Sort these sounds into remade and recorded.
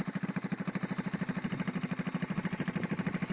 recorded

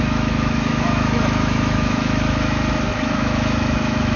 remade